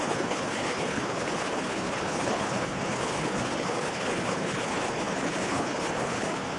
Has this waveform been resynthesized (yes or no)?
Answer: yes